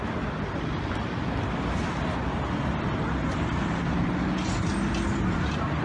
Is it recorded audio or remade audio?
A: recorded